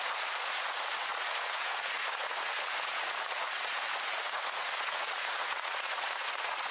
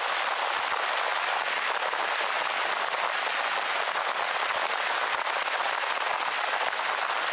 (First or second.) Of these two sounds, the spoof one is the first